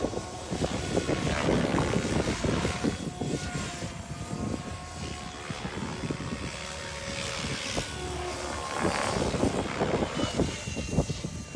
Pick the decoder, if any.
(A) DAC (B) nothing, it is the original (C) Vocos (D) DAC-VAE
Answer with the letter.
B